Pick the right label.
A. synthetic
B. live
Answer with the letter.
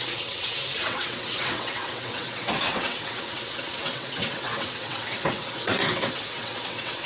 A